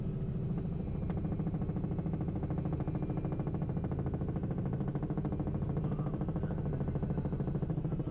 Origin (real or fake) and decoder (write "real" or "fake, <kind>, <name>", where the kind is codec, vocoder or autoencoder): real